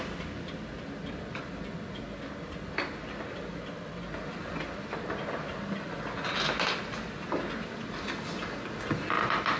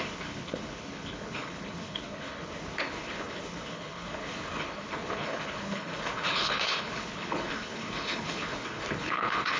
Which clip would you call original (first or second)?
first